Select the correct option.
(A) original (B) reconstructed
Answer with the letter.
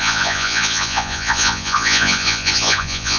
B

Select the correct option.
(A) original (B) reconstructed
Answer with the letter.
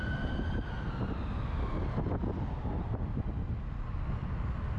A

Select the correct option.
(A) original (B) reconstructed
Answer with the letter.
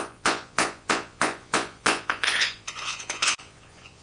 B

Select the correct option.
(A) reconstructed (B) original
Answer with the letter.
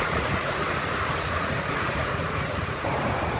A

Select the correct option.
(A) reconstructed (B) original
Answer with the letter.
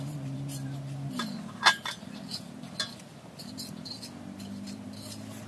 B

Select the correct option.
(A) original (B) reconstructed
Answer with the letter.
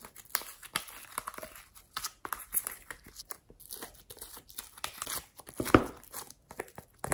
A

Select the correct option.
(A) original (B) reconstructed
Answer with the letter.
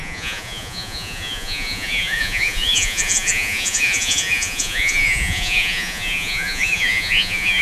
B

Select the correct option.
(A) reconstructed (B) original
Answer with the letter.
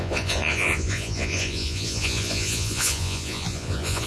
A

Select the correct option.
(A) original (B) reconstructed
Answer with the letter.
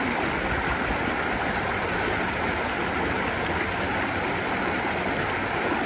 A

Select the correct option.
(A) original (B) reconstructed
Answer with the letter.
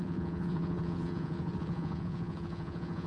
B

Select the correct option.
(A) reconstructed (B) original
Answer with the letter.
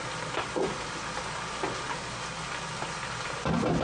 B